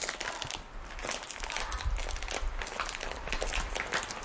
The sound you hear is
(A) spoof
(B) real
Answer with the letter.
B